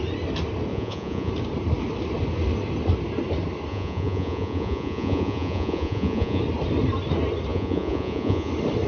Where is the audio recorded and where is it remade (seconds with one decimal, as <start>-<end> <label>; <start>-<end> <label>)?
0.0-0.7 recorded; 0.7-1.3 remade; 1.3-3.7 recorded; 3.7-6.4 remade; 6.4-7.5 recorded; 7.5-8.5 remade; 8.5-8.9 recorded